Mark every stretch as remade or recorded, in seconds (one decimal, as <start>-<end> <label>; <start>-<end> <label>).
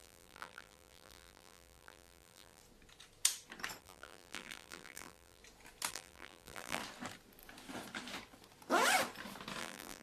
0.0-2.6 remade; 2.6-3.8 recorded; 3.8-5.4 remade; 5.4-5.9 recorded; 5.9-6.8 remade; 6.8-9.6 recorded; 9.6-10.0 remade